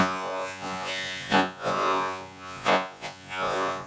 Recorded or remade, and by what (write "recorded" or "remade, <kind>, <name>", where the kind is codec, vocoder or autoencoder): remade, vocoder, Vocos